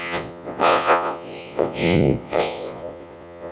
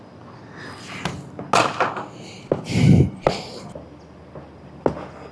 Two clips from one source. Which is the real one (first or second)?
second